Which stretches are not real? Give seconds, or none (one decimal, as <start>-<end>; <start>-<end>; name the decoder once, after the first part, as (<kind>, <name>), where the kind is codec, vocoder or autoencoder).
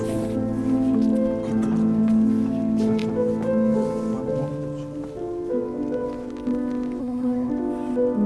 7.0-7.5 (codec, SNAC)